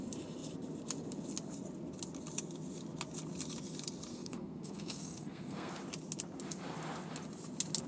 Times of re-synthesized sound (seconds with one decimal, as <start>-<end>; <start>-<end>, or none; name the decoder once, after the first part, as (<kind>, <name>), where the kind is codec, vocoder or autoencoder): 4.1-5.7 (codec, SNAC)